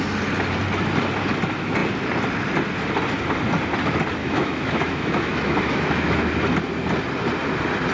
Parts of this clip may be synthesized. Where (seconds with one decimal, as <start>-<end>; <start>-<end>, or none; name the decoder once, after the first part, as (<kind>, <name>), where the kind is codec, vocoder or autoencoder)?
4.2-6.1 (autoencoder, DAC-VAE)